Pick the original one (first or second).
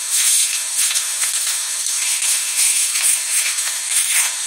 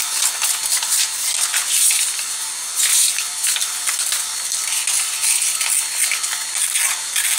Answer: second